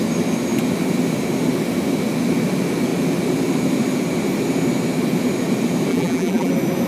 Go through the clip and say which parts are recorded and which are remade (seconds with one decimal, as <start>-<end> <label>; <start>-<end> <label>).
0.0-5.9 recorded; 5.9-6.5 remade; 6.5-6.9 recorded